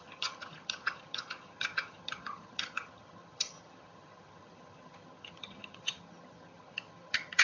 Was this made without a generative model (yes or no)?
no